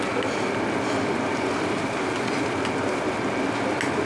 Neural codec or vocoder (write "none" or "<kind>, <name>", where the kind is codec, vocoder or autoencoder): none